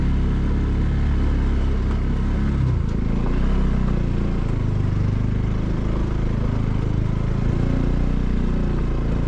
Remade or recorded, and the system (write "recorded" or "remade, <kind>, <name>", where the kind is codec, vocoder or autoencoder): recorded